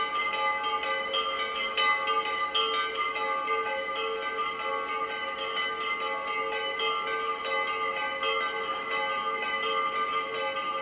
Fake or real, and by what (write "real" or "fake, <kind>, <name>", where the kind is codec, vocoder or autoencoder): real